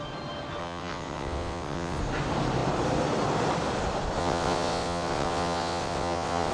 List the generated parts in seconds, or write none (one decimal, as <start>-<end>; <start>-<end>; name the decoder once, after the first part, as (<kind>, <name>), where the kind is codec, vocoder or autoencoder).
0.6-2.0 (vocoder, WaveNeXt); 4.2-6.5